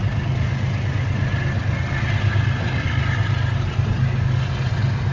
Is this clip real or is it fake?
real